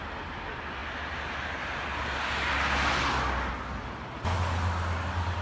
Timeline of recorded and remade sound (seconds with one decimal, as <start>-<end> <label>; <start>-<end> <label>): 0.0-5.4 recorded